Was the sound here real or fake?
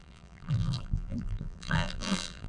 fake